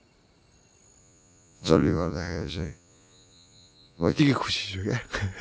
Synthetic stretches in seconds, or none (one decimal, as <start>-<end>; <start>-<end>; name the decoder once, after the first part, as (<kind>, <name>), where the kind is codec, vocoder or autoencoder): 1.0-4.2 (vocoder, Vocos)